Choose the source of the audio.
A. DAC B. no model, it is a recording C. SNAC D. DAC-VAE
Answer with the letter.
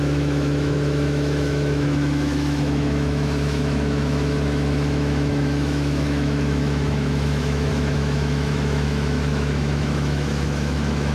D